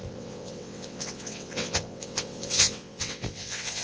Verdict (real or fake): fake